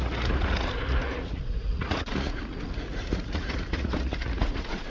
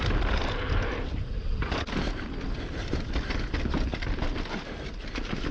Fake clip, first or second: first